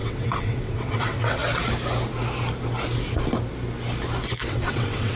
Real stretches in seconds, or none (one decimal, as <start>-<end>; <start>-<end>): 1.4-4.5